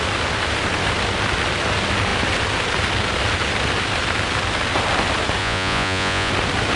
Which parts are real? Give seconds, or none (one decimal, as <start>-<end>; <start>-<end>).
0.0-5.4; 6.3-6.8